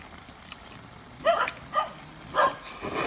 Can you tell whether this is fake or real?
real